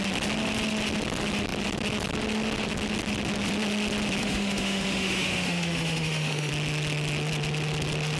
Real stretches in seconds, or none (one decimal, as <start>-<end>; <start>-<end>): 0.0-4.2; 6.5-8.2